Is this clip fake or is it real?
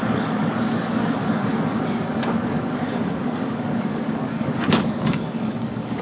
fake